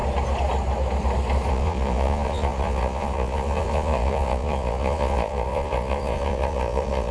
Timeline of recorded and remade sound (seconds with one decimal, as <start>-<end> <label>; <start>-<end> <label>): 0.0-1.5 recorded; 1.5-7.1 remade